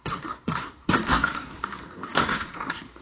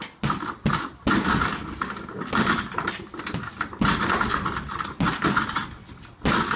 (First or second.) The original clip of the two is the second